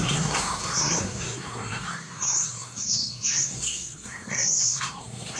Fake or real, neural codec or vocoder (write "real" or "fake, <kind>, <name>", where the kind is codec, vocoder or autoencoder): fake, codec, SNAC